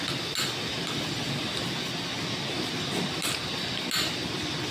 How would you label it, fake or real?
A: real